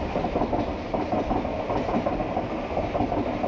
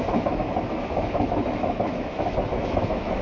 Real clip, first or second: first